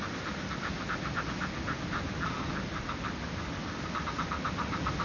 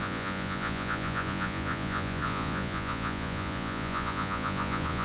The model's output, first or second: second